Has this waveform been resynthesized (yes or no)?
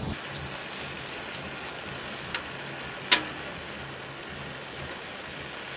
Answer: no